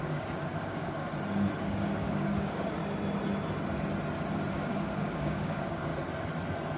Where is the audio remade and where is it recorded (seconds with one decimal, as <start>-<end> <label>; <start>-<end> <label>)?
0.0-1.1 remade; 1.1-1.6 recorded; 1.6-2.8 remade; 2.8-4.5 recorded; 4.5-5.9 remade; 5.9-6.8 recorded